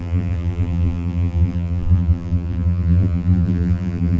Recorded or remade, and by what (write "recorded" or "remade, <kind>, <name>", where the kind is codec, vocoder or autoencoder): remade, vocoder, BigVGAN v2